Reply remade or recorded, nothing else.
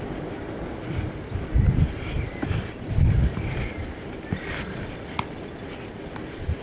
recorded